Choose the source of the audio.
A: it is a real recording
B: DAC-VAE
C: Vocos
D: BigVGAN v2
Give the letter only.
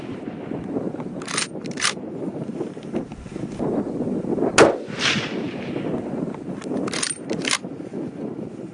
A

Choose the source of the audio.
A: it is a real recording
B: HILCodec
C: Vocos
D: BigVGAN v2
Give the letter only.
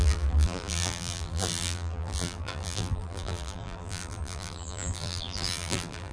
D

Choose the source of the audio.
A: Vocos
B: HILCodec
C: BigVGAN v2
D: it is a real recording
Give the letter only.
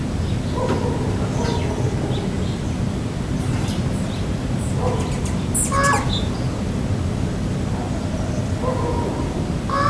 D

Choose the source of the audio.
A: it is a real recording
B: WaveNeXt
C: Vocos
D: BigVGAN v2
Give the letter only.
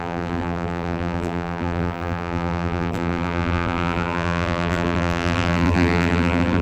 D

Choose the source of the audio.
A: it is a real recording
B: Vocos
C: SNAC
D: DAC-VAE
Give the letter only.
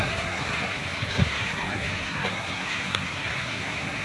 C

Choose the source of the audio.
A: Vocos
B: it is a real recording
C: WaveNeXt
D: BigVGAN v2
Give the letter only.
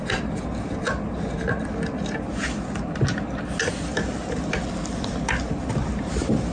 B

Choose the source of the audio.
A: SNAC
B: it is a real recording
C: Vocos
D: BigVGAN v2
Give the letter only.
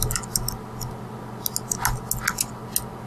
B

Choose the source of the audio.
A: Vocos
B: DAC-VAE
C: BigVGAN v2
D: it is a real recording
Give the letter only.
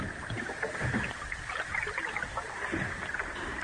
D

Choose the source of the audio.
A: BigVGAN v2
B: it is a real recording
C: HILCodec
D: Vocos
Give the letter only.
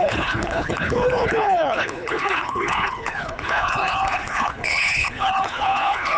C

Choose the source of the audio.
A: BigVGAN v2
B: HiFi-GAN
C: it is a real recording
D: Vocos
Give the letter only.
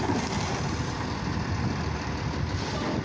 C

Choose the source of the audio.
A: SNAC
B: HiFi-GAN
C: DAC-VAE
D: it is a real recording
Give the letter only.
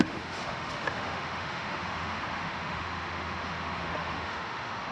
C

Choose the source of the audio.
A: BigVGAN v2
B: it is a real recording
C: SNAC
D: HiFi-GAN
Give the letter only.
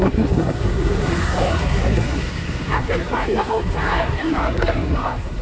C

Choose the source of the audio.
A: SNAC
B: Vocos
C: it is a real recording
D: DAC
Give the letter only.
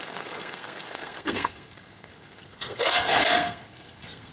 A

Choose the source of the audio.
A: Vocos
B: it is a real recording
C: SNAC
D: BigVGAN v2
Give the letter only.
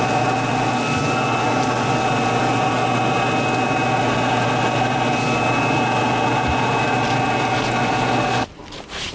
B